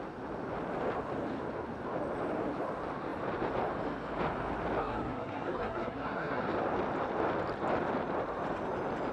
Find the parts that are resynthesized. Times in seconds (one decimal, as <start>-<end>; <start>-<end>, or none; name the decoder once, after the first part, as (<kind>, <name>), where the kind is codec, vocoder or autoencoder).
4.8-6.4 (codec, SNAC)